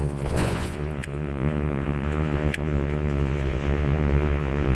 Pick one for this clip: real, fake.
fake